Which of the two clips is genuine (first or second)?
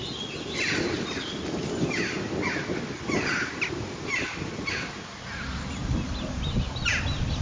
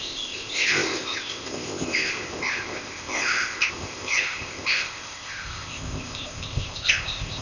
first